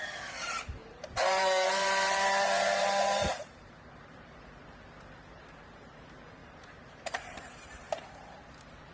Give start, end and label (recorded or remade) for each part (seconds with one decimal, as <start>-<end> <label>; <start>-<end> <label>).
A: 0.0-0.8 recorded; 0.8-3.7 remade; 3.7-6.4 recorded; 6.4-8.1 remade; 8.1-8.9 recorded